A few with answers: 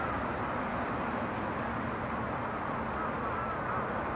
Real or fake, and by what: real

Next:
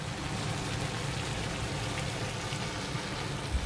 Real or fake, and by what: real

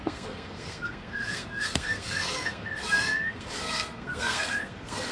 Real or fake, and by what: fake, codec, SNAC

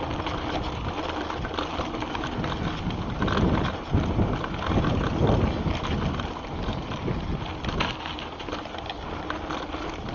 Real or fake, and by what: real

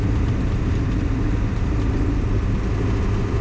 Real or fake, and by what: real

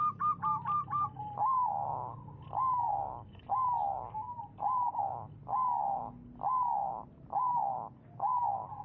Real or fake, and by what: real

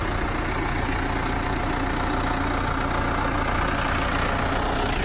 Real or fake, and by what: real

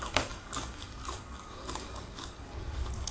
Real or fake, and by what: fake, codec, DAC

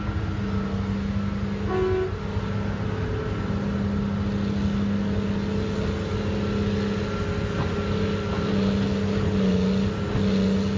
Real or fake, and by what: real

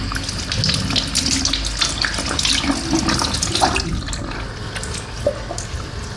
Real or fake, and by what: real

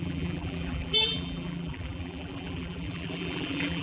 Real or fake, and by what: fake, vocoder, BigVGAN v2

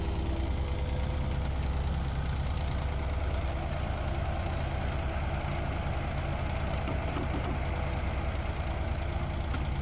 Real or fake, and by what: real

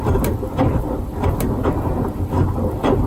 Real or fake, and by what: real